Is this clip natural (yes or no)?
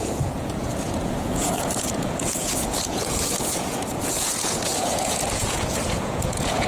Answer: no